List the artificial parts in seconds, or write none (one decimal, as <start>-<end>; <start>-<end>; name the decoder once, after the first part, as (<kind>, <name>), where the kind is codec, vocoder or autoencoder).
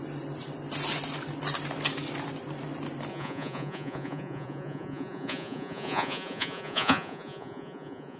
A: 3.1-8.2 (vocoder, Vocos)